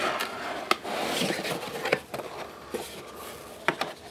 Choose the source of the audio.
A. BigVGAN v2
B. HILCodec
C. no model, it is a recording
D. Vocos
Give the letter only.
C